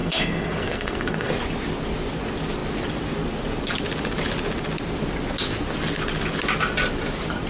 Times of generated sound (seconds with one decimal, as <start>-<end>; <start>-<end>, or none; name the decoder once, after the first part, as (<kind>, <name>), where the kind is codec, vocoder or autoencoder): 0.0-1.3 (codec, SNAC)